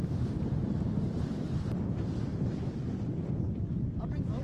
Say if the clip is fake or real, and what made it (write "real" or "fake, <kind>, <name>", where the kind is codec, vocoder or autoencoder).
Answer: real